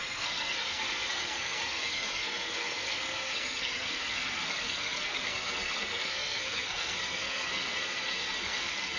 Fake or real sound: fake